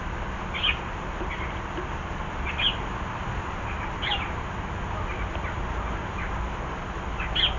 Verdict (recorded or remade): recorded